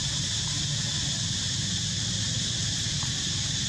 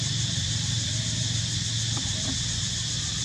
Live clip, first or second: second